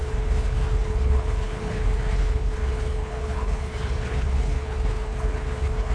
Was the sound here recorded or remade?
remade